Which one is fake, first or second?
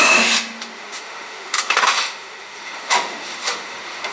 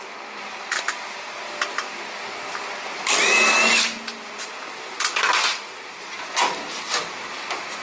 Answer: first